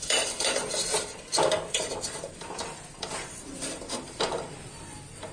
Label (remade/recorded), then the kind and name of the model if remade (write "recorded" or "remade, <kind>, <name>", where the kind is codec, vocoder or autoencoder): remade, vocoder, BigVGAN v2